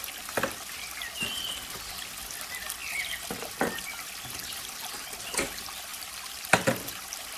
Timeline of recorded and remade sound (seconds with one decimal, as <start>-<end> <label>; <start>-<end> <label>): 0.0-2.8 recorded; 2.8-3.5 remade; 3.5-5.9 recorded; 5.9-6.4 remade; 6.4-7.4 recorded

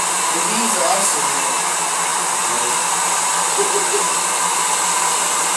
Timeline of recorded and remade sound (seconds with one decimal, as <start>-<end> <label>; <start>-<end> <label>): 0.0-2.1 recorded; 2.1-5.6 remade